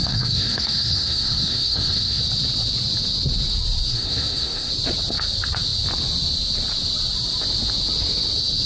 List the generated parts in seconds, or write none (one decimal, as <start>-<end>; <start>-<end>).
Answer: 0.0-2.2; 3.9-4.7